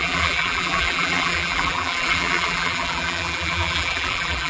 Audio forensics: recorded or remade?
remade